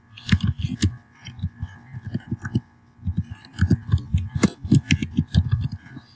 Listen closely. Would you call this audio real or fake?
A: real